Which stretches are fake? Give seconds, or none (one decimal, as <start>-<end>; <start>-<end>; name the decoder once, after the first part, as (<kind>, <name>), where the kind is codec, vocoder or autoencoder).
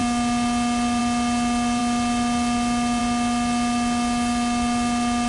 none